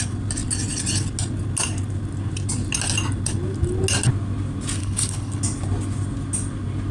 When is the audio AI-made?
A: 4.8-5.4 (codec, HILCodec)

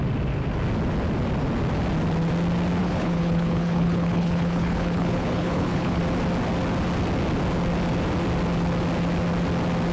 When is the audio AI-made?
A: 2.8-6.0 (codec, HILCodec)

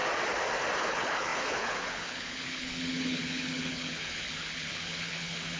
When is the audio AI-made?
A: 0.8-5.6 (codec, HILCodec)